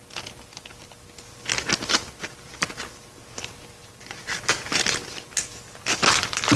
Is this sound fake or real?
real